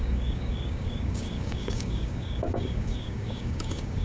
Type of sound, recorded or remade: remade